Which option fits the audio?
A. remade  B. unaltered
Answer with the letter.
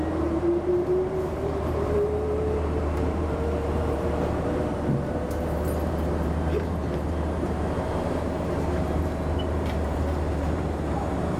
A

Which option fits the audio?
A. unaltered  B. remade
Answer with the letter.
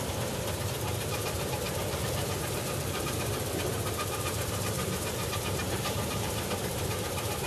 B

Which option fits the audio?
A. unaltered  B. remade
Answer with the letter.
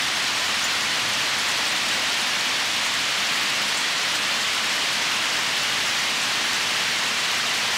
A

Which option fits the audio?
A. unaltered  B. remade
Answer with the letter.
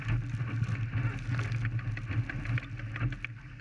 A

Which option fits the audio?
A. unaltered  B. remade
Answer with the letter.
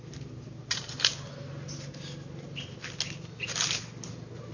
A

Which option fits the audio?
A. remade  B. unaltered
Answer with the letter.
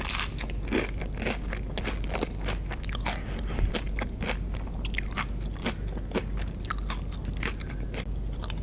B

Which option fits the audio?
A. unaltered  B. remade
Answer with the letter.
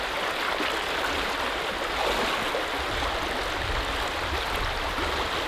A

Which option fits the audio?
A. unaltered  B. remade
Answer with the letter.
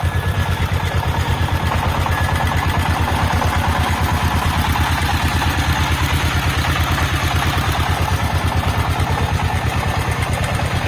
A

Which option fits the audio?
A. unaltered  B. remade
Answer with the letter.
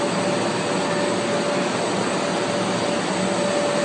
A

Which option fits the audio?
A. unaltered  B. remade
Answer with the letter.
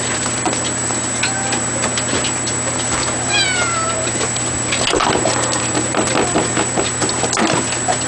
A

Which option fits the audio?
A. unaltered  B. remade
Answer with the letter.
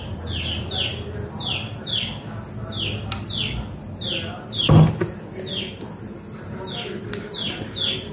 A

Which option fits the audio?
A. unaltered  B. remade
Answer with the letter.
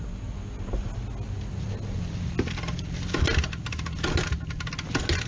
A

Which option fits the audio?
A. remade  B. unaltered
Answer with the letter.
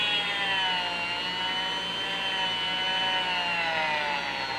B